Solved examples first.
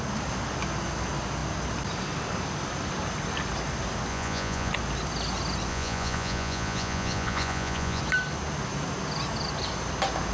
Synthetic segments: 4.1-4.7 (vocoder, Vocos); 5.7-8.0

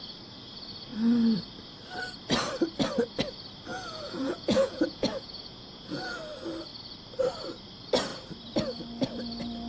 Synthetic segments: 3.7-6.2 (vocoder, Vocos)

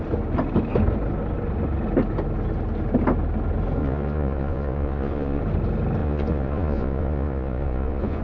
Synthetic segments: 3.8-5.4 (vocoder, Vocos); 6.0-8.2

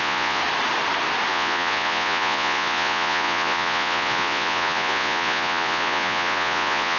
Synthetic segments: 0.0-0.4 (vocoder, Vocos); 1.3-7.0

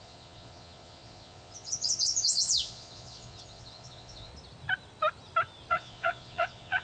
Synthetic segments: 0.0-4.3 (vocoder, Vocos); 5.7-6.8

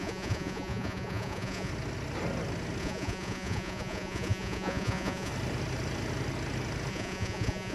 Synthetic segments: 0.0-1.7 (vocoder, Vocos); 2.8-5.3; 6.9-7.7

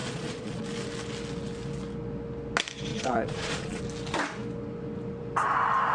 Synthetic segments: 0.0-0.6 (vocoder, Vocos); 2.9-3.8